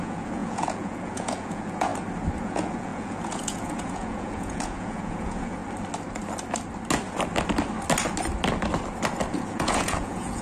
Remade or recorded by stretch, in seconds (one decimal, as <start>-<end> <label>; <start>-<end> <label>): 0.0-1.9 remade; 1.9-2.4 recorded; 2.4-5.6 remade; 5.6-9.3 recorded; 9.3-10.4 remade